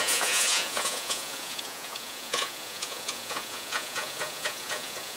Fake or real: fake